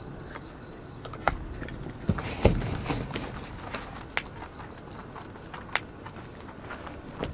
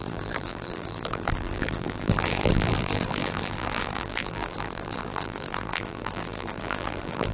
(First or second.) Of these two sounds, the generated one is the second